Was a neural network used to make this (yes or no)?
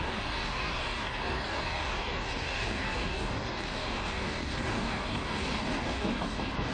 yes